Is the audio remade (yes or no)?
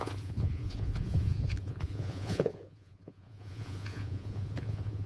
yes